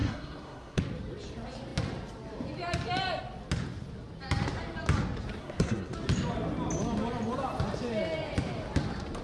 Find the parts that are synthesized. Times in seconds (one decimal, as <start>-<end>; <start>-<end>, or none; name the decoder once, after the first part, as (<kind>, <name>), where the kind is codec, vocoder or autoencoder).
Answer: 0.0-0.8 (codec, SNAC); 5.4-5.9